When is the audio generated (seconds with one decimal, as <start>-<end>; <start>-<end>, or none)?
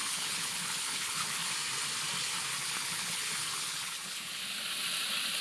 0.0-1.5; 2.5-4.4